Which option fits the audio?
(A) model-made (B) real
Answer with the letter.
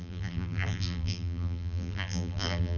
A